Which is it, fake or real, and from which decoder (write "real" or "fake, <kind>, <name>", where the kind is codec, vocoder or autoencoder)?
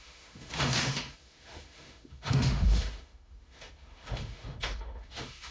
fake, autoencoder, DAC-VAE